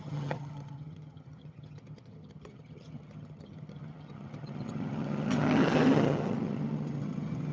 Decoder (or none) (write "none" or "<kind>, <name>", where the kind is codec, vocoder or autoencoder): vocoder, HiFi-GAN